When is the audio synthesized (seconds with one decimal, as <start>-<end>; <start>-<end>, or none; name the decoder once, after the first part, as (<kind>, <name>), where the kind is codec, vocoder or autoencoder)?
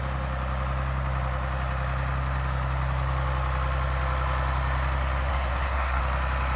5.3-6.0 (codec, SNAC)